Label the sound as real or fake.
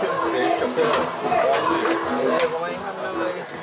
real